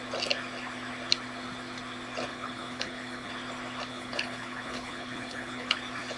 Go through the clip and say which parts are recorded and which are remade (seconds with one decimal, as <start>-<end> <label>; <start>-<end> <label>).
0.0-2.3 recorded; 2.3-3.3 remade; 3.3-3.9 recorded; 3.9-5.8 remade; 5.8-6.2 recorded